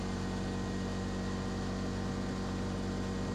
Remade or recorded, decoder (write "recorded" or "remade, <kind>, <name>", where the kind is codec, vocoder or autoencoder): recorded